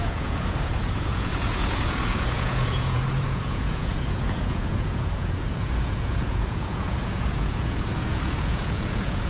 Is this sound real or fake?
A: fake